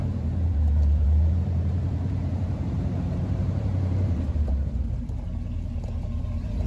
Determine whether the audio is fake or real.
fake